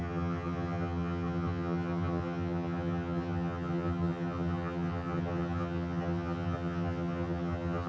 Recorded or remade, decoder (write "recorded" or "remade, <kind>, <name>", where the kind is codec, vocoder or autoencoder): remade, vocoder, HiFi-GAN